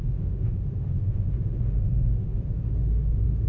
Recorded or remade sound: remade